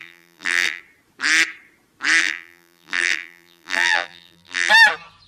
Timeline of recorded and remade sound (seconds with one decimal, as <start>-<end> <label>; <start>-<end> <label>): 0.0-0.8 remade; 0.8-2.2 recorded; 2.2-4.7 remade; 4.7-5.3 recorded